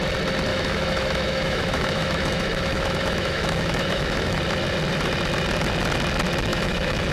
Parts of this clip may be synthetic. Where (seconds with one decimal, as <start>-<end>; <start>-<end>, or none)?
0.5-4.4; 6.5-7.1